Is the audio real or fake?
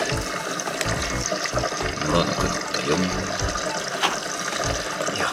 real